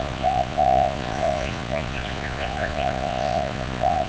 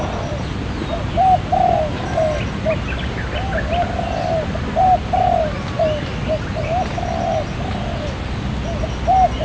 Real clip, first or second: second